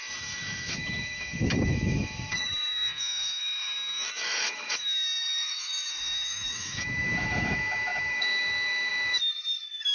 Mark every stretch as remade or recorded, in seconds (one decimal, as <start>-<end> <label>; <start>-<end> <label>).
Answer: 0.0-9.9 remade